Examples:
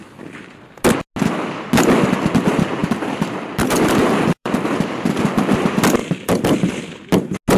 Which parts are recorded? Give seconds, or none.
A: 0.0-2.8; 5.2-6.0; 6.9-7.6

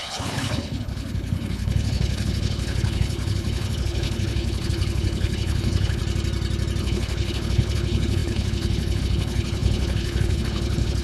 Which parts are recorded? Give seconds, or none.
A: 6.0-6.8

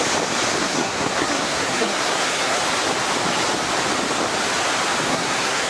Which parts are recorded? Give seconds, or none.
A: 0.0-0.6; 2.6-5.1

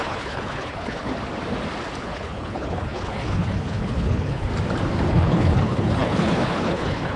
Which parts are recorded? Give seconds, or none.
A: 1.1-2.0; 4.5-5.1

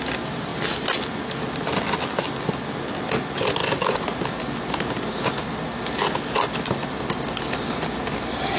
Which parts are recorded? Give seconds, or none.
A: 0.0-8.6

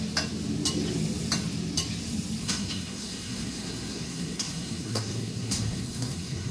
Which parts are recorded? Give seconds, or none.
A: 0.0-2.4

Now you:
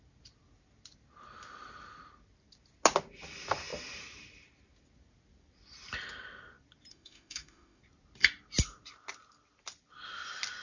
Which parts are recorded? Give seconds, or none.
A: 0.0-6.9; 7.8-10.6

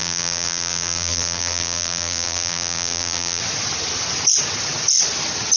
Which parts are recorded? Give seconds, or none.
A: 3.4-5.6